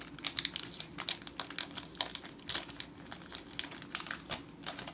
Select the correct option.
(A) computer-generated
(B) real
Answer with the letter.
B